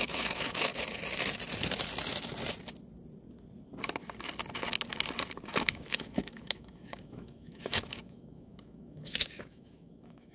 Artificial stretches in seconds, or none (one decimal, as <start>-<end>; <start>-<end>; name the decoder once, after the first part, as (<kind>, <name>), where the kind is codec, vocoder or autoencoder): 0.0-0.7 (autoencoder, DAC-VAE); 5.6-10.3